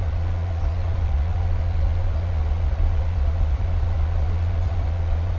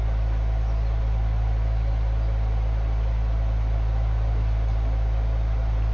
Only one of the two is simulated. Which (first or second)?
first